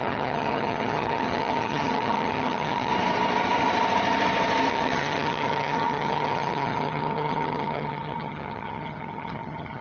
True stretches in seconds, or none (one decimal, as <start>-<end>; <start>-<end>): 2.9-4.7